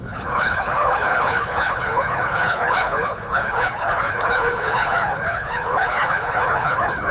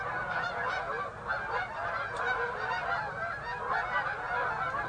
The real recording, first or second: second